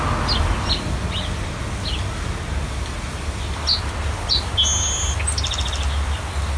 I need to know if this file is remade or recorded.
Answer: recorded